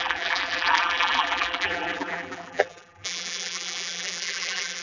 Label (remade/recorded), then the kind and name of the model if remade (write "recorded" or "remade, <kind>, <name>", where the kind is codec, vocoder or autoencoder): remade, vocoder, BigVGAN v2